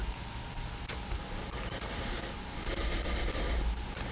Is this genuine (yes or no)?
yes